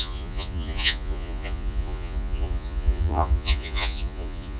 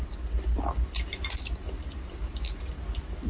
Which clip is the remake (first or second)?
first